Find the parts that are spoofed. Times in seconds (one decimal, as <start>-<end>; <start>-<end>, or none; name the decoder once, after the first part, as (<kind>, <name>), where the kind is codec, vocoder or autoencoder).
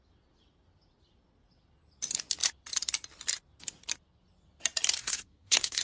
5.0-5.8 (codec, SNAC)